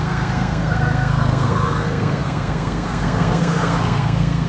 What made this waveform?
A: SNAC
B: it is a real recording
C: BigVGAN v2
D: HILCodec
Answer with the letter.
A